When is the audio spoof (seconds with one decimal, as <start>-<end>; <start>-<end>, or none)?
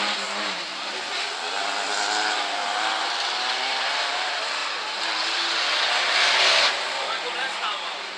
0.0-0.9; 2.9-4.6; 6.6-7.0; 7.5-8.2